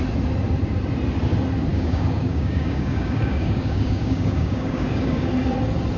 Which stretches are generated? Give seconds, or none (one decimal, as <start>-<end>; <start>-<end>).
1.7-5.3